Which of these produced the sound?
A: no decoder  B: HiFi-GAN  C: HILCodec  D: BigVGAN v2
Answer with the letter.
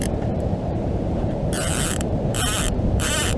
D